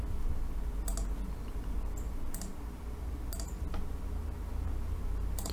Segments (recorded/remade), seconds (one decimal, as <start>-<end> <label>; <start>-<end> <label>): 0.0-0.9 remade; 0.9-1.5 recorded; 1.5-2.5 remade; 2.5-4.8 recorded; 4.8-5.5 remade